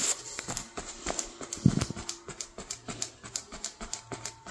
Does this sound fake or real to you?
real